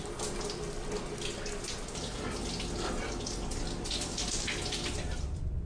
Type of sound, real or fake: real